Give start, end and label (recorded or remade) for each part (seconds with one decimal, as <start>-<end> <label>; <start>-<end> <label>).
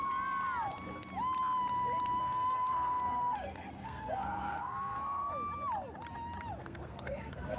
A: 0.0-2.2 recorded; 2.2-5.3 remade; 5.3-6.6 recorded; 6.6-7.6 remade